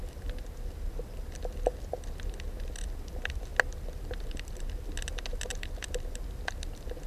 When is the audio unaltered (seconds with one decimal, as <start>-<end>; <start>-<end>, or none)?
0.0-7.1